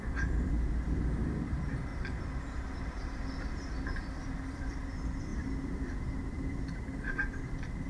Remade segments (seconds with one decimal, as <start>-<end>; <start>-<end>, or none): 0.0-1.9; 2.4-7.9

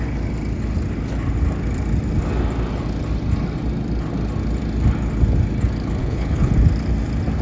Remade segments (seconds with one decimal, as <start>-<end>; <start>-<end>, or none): 6.0-6.5

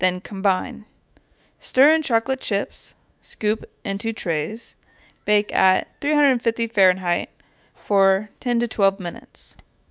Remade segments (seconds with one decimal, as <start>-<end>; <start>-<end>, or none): 0.0-9.9